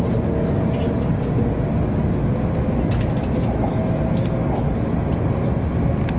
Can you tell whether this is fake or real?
real